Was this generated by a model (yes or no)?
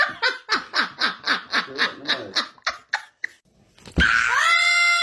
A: no